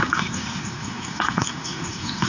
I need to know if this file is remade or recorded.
remade